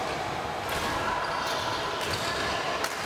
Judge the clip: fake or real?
real